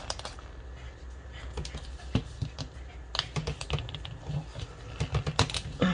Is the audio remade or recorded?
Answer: recorded